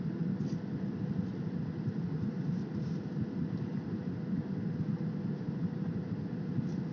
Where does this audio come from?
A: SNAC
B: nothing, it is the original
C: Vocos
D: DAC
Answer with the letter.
B